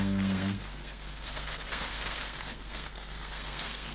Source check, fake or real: fake